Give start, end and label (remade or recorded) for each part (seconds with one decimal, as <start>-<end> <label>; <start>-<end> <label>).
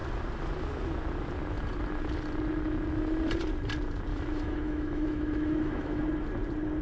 0.0-4.1 recorded; 4.1-6.0 remade; 6.0-6.8 recorded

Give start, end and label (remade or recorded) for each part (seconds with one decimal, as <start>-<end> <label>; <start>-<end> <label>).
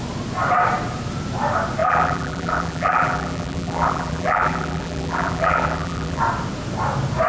0.0-1.8 recorded; 1.8-6.2 remade; 6.2-7.3 recorded